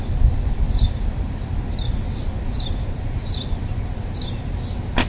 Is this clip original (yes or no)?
yes